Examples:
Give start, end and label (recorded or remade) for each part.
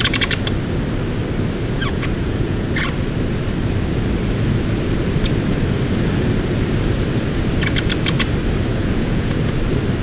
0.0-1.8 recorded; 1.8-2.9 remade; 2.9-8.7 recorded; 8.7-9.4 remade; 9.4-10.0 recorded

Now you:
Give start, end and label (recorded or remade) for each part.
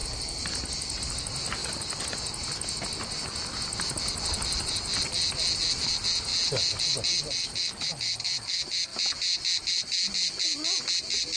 0.0-11.4 recorded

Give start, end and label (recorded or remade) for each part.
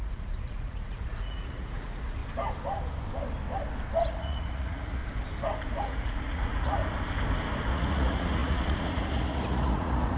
0.0-2.2 remade; 2.2-4.1 recorded; 4.1-5.0 remade; 5.0-5.8 recorded; 5.8-6.8 remade; 6.8-7.7 recorded; 7.7-10.2 remade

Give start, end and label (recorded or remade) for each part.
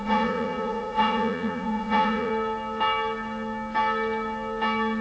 0.0-2.3 remade; 2.3-5.0 recorded